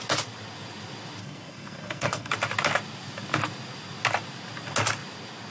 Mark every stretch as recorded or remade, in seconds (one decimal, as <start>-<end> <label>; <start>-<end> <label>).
0.0-1.2 recorded; 1.2-2.3 remade; 2.3-5.5 recorded